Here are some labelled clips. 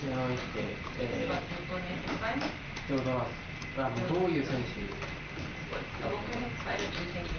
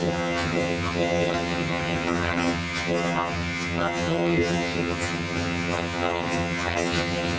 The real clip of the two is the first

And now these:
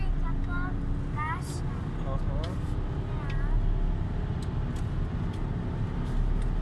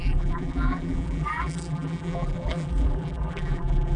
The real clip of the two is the first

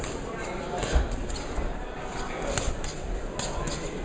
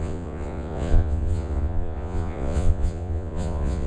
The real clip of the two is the first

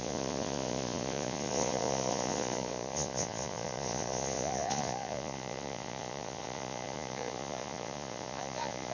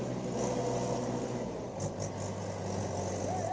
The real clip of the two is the second